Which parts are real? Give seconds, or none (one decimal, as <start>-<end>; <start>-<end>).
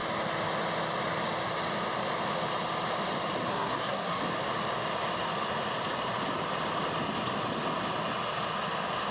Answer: 0.0-3.5; 4.2-9.1